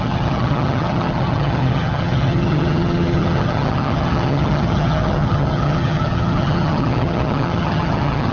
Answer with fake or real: fake